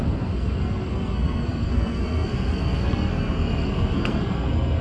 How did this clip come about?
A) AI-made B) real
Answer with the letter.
A